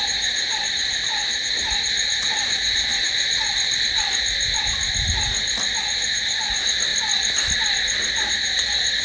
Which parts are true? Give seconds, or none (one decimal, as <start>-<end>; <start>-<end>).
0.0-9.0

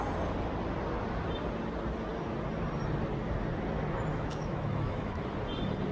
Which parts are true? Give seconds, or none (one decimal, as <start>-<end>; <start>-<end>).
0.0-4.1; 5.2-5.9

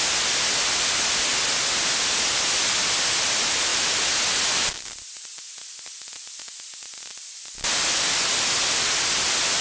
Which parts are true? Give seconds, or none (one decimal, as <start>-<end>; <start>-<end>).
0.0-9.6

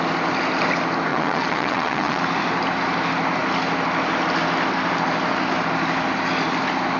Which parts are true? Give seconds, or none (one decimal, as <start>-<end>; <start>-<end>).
0.0-1.1; 2.2-7.0